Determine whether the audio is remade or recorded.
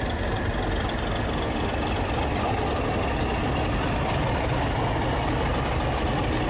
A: recorded